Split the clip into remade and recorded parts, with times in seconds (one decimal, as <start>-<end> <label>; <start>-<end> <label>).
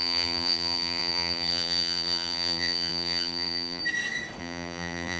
0.0-3.8 remade; 3.8-4.4 recorded; 4.4-5.2 remade